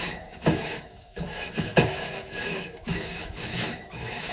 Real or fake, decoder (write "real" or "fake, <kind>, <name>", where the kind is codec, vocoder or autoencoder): fake, autoencoder, DAC-VAE